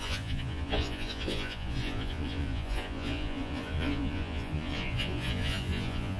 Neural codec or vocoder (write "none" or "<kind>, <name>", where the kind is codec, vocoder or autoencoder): vocoder, Vocos